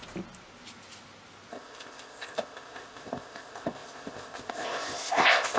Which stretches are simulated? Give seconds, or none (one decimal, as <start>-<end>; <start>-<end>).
1.5-5.6